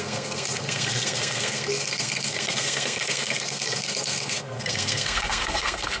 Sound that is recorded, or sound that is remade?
remade